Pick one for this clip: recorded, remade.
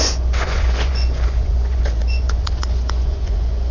remade